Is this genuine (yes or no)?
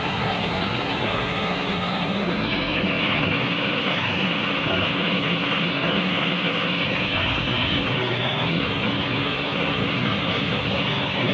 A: no